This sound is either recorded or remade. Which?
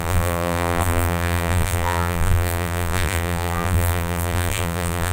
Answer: remade